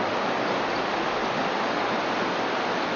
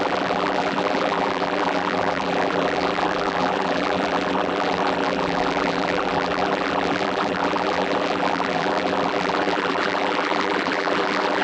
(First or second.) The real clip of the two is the first